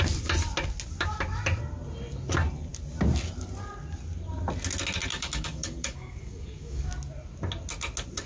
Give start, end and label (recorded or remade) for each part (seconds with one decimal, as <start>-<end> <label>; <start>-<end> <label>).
0.0-5.1 recorded; 5.1-6.9 remade; 6.9-8.3 recorded